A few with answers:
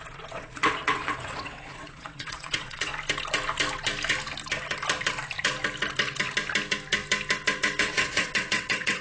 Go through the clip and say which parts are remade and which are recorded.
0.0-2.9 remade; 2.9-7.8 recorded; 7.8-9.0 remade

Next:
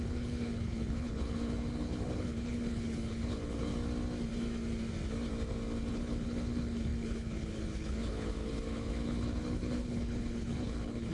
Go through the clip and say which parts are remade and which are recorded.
0.0-3.7 remade; 3.7-5.9 recorded; 5.9-11.1 remade

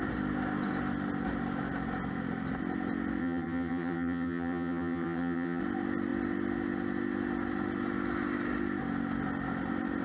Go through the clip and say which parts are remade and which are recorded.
0.0-3.2 recorded; 3.2-5.6 remade; 5.6-10.0 recorded